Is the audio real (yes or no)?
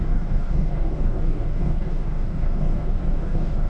no